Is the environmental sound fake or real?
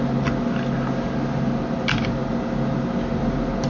real